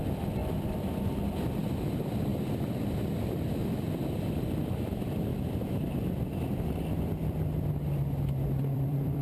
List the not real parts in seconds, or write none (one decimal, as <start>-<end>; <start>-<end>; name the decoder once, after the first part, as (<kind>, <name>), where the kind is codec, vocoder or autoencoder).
0.0-2.3 (vocoder, BigVGAN v2); 3.6-5.3; 8.2-9.2